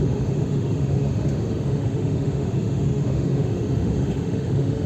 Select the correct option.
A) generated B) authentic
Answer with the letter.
A